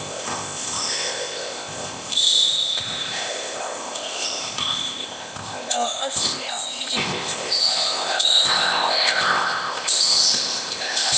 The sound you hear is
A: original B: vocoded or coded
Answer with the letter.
B